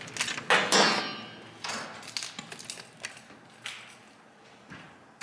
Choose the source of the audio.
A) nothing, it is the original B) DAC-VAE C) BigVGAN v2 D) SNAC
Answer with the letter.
A